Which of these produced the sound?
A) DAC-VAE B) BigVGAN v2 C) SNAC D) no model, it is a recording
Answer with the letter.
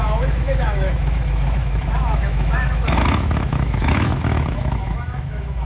A